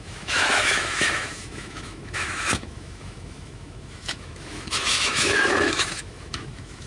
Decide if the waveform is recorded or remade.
remade